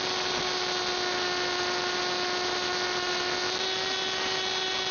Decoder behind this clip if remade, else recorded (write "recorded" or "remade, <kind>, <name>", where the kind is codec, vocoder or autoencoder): recorded